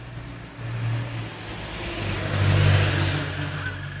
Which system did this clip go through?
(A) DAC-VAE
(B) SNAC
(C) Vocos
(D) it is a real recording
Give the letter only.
D